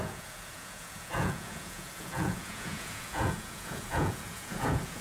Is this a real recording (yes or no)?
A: no